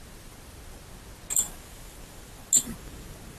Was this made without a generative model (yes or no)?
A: yes